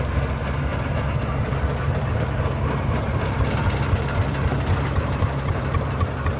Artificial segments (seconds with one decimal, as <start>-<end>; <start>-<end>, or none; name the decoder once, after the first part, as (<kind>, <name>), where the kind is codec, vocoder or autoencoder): 0.0-6.4 (vocoder, BigVGAN v2)